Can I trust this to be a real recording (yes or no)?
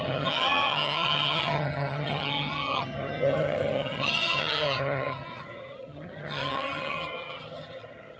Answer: no